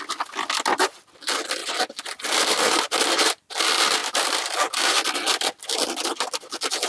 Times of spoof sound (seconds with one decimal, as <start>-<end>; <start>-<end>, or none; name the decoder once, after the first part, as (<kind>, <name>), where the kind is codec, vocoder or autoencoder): 1.6-3.6 (vocoder, BigVGAN v2); 4.0-5.0